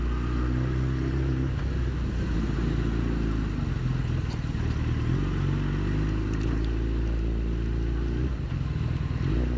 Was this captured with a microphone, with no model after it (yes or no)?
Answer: yes